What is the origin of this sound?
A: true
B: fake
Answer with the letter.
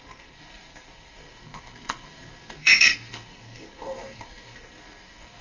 B